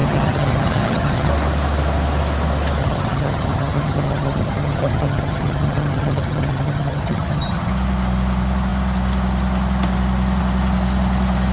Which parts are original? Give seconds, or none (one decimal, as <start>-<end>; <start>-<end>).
1.3-2.8; 7.7-11.5